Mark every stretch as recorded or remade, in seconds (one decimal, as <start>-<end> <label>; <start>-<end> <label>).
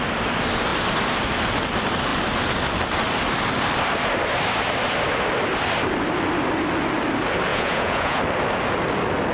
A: 0.0-7.5 recorded; 7.5-8.2 remade; 8.2-9.3 recorded